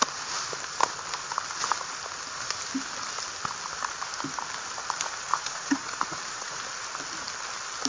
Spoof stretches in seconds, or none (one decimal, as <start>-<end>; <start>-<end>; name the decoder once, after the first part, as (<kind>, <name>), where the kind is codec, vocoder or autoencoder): 5.3-6.6 (vocoder, Vocos)